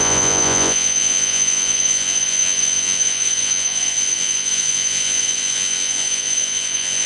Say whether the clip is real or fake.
fake